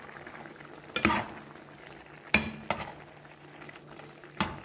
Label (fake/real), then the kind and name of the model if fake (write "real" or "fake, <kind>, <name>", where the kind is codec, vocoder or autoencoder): real